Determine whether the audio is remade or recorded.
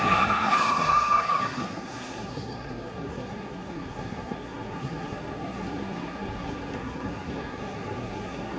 remade